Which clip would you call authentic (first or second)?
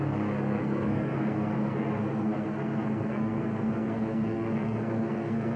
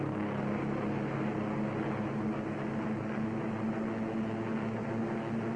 second